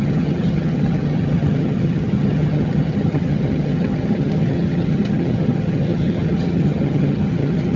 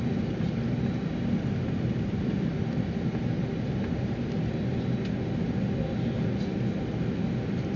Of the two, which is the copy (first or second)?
first